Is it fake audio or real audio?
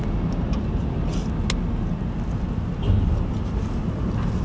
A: real